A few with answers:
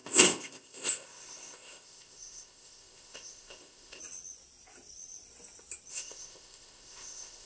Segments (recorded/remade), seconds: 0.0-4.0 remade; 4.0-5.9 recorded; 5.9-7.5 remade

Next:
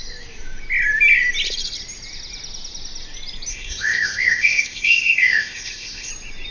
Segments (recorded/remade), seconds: 0.0-3.5 recorded; 3.5-6.1 remade; 6.1-6.5 recorded

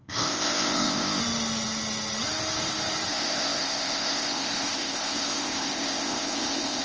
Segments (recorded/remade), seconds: 0.0-1.2 remade; 1.2-3.1 recorded; 3.1-6.8 remade

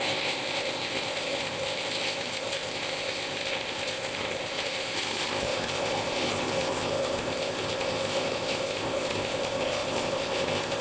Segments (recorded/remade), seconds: 0.0-10.8 remade

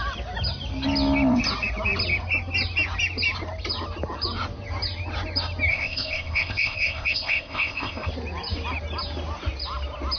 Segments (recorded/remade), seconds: 0.0-5.7 recorded; 5.7-8.1 remade; 8.1-10.2 recorded

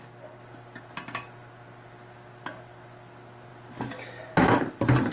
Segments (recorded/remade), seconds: 0.0-5.1 recorded

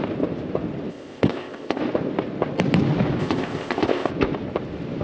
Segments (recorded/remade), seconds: 0.0-0.9 recorded; 0.9-1.8 remade; 1.8-3.2 recorded; 3.2-4.1 remade; 4.1-5.0 recorded